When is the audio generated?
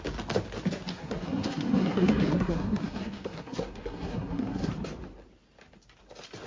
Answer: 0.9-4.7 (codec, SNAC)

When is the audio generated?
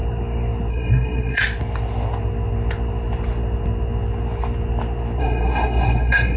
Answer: 0.7-1.4 (codec, SNAC); 5.2-6.4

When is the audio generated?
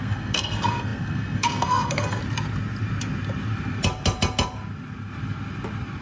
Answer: 0.0-2.2 (codec, SNAC)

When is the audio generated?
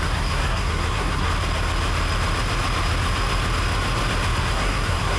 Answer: 0.0-1.3 (codec, SNAC); 4.4-5.2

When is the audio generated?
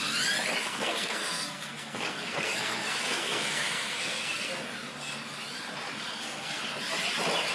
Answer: 0.6-4.5 (codec, SNAC); 6.1-6.6